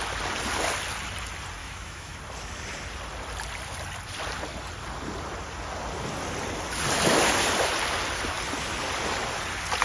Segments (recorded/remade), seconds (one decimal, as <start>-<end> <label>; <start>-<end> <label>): 0.0-1.6 recorded; 1.6-2.2 remade; 2.2-9.8 recorded